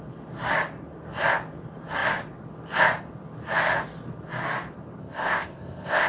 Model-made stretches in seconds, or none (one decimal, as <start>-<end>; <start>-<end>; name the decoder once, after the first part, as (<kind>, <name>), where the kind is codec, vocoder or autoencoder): 5.0-6.1 (codec, ZipCodec)